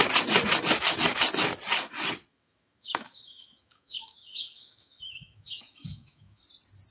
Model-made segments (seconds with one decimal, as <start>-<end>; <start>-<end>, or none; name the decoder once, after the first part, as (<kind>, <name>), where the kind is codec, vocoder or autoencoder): 2.3-6.4 (autoencoder, DAC-VAE)